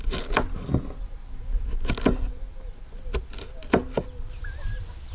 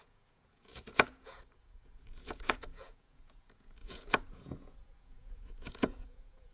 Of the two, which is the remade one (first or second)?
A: second